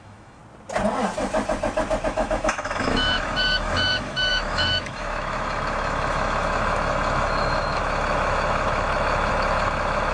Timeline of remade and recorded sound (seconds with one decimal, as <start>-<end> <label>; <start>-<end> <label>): 0.0-0.4 remade; 0.4-2.1 recorded; 2.1-10.1 remade